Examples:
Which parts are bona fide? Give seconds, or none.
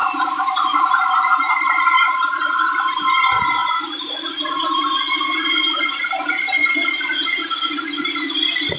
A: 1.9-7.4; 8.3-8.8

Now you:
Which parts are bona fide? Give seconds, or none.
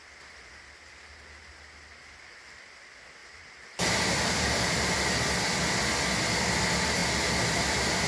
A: 0.0-3.2; 4.9-7.0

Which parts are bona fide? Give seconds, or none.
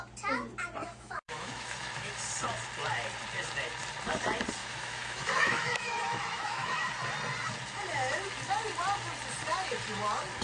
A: 0.0-0.8; 2.1-4.6; 6.9-10.4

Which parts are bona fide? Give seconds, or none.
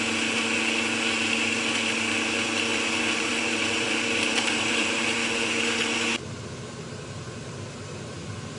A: 0.0-2.7; 5.8-8.6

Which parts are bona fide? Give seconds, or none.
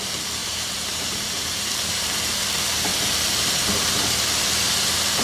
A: 2.9-5.2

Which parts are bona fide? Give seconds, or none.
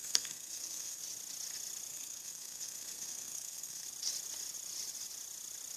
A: 1.0-1.9; 3.8-5.8